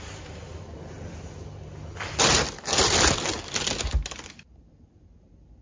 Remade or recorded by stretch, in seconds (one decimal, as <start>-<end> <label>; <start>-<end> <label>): 0.0-5.6 recorded